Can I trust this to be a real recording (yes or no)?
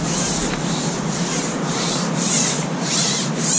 no